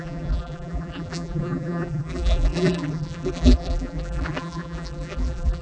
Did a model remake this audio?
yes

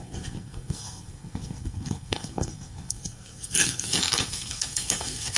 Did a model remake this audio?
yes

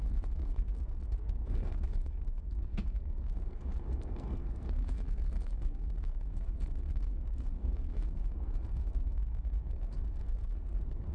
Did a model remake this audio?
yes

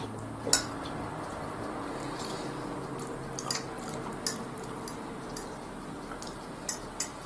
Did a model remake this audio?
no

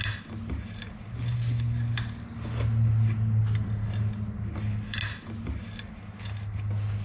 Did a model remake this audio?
no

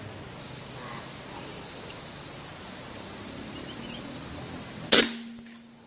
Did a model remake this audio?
no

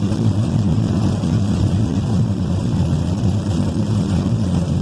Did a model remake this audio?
yes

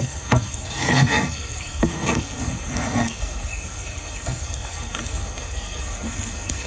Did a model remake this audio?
yes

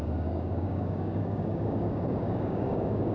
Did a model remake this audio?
yes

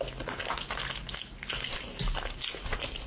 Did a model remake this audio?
no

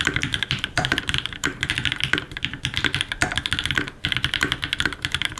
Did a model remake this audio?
yes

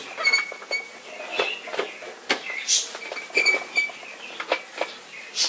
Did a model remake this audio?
no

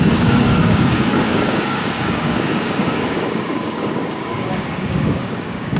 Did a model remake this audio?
yes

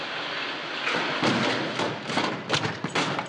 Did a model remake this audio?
no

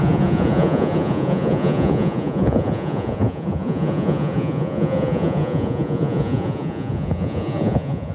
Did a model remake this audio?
yes